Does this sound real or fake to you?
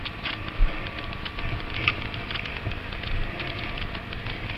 fake